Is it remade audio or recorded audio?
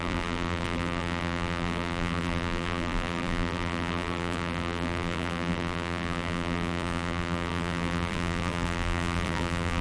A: remade